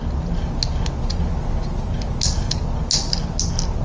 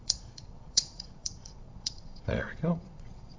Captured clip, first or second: first